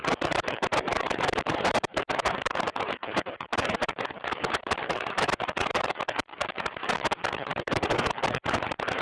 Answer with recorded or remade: remade